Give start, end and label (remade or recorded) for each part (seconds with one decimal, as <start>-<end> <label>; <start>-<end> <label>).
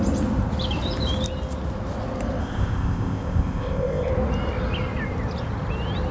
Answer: 0.0-2.4 recorded; 2.4-4.1 remade; 4.1-6.1 recorded